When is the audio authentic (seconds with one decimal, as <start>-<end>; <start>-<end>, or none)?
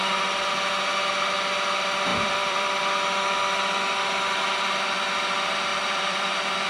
0.0-2.1; 2.8-5.7; 6.3-6.7